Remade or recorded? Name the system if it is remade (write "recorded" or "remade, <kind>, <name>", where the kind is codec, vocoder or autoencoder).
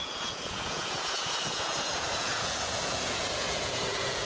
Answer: remade, vocoder, Vocos